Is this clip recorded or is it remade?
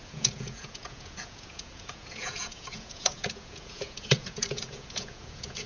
remade